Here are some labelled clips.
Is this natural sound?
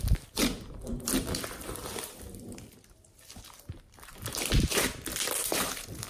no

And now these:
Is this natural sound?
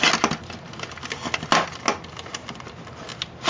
yes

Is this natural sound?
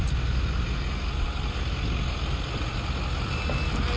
yes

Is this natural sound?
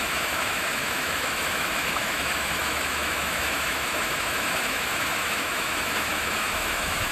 no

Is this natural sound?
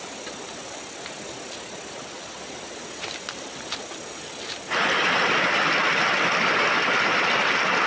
yes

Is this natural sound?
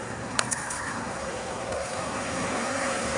no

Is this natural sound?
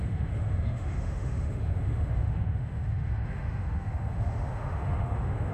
no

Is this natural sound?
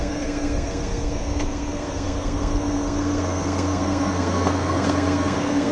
no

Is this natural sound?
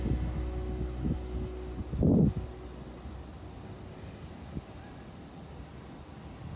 yes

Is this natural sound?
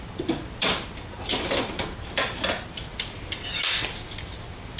yes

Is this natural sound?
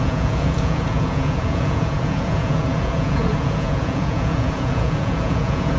no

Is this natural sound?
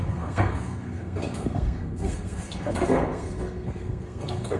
no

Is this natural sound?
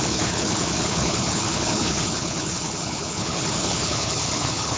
no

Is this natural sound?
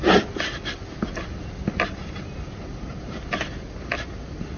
yes